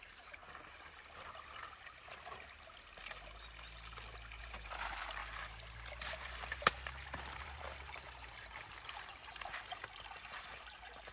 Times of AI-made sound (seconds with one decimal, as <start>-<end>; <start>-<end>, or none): 0.0-0.4; 4.4-5.2; 5.9-11.1